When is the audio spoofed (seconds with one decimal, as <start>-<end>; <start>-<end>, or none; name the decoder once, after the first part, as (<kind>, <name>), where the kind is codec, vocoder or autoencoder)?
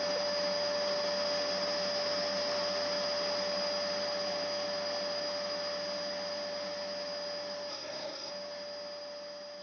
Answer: 7.7-8.3 (codec, SNAC)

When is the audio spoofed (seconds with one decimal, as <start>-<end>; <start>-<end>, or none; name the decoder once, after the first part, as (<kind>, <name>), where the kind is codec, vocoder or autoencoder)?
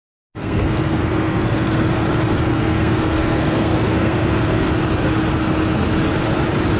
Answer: 0.4-1.9 (codec, SNAC); 2.5-4.7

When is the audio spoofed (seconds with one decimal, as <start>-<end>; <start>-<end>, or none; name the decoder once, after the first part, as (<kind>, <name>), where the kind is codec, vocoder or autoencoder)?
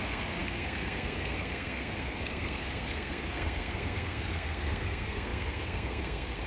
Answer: 0.0-6.5 (codec, SNAC)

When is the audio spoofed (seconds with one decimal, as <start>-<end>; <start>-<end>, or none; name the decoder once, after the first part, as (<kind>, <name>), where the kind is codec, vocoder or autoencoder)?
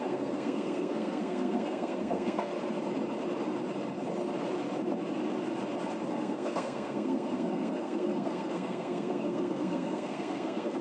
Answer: 0.0-2.5 (codec, SNAC); 6.1-10.8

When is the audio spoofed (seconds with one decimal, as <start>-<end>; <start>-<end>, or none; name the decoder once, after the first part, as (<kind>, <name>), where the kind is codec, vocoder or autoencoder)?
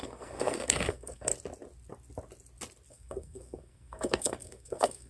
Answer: 0.0-1.3 (codec, SNAC); 2.9-5.1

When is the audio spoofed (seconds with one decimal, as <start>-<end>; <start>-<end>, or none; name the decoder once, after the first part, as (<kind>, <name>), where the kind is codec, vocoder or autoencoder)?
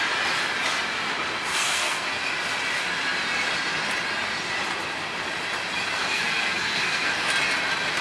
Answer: 1.5-2.2 (codec, SNAC); 5.9-7.3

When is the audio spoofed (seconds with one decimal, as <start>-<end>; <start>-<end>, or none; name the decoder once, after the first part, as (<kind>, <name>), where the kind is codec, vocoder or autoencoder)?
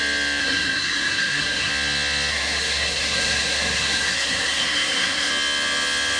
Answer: 0.4-1.7 (codec, SNAC); 2.3-5.3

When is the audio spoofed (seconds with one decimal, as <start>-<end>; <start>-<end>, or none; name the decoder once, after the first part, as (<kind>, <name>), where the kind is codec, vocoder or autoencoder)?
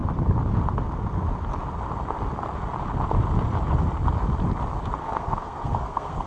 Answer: 5.0-6.3 (codec, SNAC)